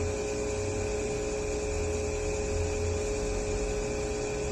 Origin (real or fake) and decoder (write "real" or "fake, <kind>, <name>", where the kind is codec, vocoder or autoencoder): real